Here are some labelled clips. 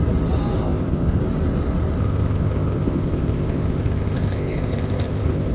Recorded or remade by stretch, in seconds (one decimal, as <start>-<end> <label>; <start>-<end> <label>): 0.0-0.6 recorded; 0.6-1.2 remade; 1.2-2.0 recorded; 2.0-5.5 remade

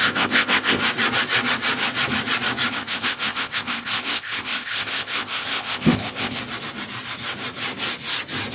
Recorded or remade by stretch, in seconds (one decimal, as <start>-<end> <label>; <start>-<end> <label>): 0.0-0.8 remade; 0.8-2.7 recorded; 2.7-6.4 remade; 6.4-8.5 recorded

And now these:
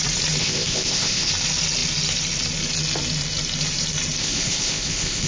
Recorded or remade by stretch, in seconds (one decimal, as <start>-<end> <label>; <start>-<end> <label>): 0.0-0.4 recorded; 0.4-1.3 remade; 1.3-4.2 recorded; 4.2-5.3 remade